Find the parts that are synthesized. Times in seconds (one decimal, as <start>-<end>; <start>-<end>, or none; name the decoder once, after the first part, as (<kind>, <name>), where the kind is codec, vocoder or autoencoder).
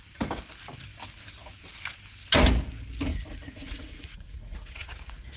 3.1-5.4 (vocoder, Vocos)